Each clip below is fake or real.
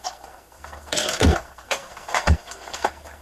fake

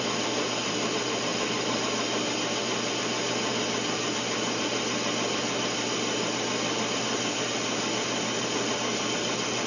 real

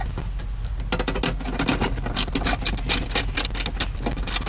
real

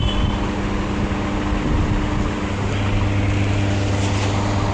real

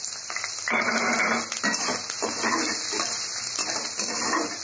real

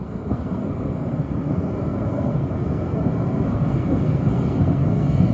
fake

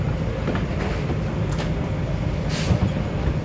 real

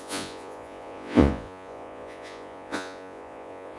fake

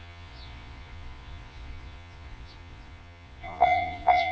fake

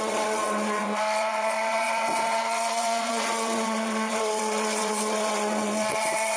fake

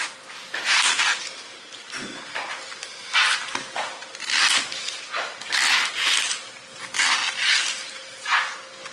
real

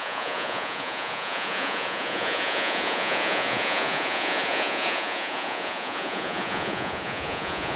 fake